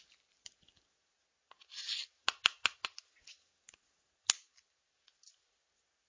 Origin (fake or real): real